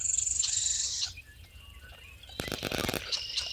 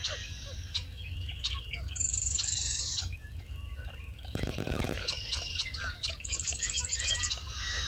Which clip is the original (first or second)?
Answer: first